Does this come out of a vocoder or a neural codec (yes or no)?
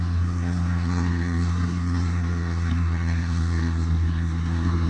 yes